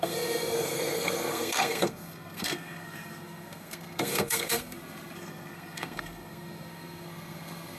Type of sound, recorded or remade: remade